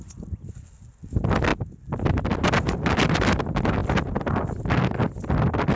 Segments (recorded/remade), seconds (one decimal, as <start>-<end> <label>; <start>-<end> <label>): 0.0-5.8 recorded